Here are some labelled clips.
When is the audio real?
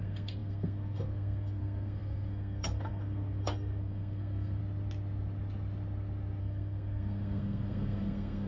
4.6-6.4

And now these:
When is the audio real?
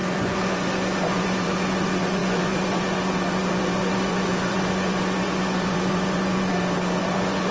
6.5-7.0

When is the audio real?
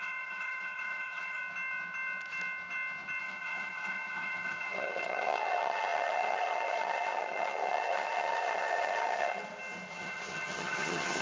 1.4-3.2; 9.4-9.9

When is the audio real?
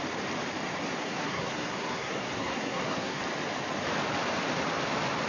0.0-1.0; 3.2-5.3